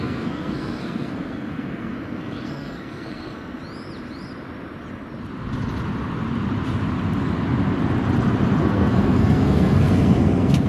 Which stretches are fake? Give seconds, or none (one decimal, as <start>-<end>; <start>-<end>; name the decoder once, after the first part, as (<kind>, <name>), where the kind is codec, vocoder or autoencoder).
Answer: 0.0-3.6 (codec, SNAC); 8.6-10.7